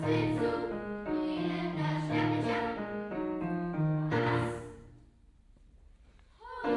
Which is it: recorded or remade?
remade